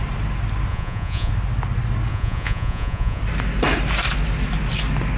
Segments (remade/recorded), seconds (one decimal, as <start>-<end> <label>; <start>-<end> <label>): 0.0-0.7 recorded; 0.7-1.3 remade; 1.3-2.1 recorded; 2.1-3.2 remade; 3.2-5.2 recorded